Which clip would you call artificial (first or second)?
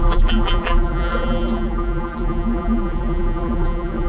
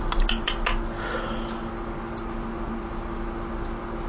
first